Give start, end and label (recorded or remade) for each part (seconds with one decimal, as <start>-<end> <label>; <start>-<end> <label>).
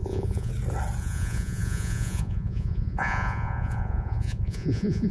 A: 0.0-0.5 remade; 0.5-1.0 recorded; 1.0-5.1 remade